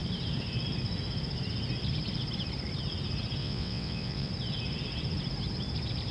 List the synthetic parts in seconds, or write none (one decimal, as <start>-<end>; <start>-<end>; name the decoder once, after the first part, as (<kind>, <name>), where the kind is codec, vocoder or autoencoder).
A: 3.4-4.3 (vocoder, WaveNeXt)